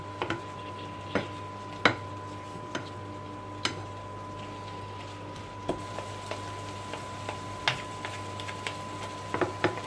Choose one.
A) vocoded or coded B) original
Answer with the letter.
B